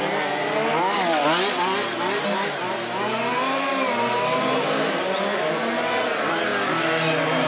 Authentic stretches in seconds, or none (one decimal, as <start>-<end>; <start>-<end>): 0.0-7.5